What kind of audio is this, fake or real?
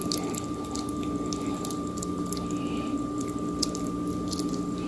real